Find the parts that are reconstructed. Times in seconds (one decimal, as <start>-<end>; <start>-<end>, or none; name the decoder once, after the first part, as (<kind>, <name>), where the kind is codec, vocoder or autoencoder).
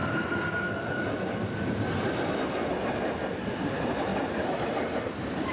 3.3-4.1 (vocoder, BigVGAN v2); 4.8-5.5